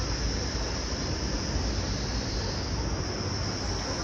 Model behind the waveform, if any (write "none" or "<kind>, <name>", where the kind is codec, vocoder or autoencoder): none